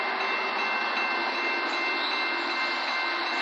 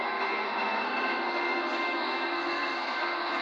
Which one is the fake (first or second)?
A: second